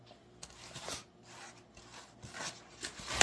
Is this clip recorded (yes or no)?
yes